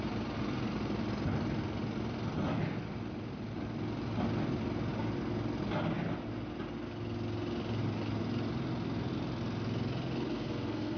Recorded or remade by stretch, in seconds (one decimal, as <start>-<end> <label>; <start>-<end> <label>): 0.0-10.3 recorded; 10.3-11.0 remade